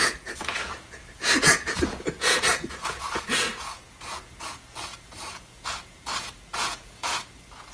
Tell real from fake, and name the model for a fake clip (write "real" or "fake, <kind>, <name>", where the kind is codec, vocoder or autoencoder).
fake, vocoder, Vocos